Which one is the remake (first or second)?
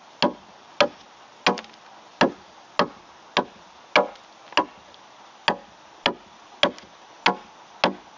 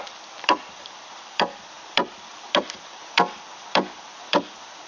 second